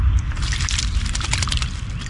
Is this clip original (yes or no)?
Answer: no